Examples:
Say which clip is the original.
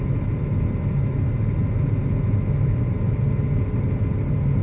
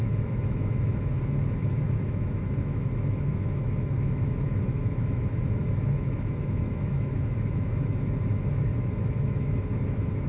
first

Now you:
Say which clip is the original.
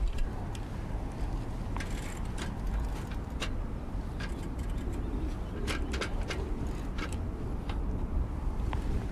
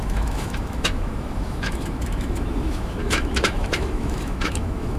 first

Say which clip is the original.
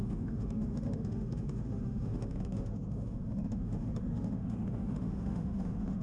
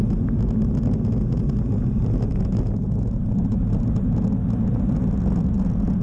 second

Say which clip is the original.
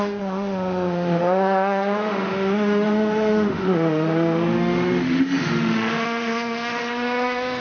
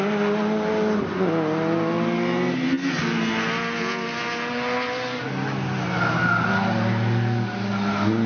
second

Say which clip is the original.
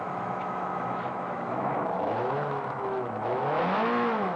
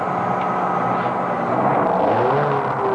second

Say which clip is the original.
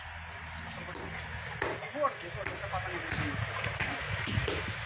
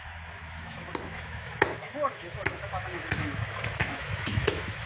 first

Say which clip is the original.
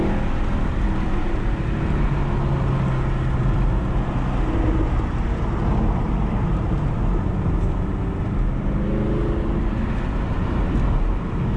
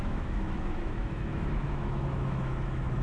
first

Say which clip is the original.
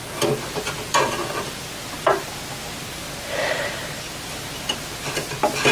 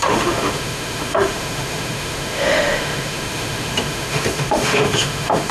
first